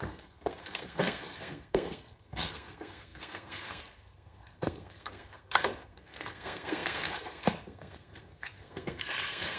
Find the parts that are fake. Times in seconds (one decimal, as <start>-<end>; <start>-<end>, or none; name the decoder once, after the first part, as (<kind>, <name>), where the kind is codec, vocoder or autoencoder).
0.0-9.6 (codec, SNAC)